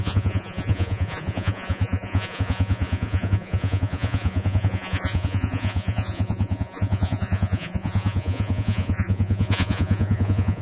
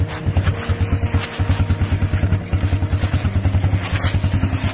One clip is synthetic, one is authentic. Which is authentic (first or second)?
second